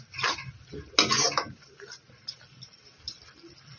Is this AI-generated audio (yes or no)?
no